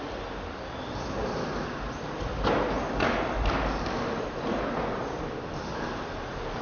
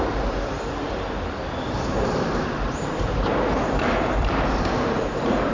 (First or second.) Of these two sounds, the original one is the first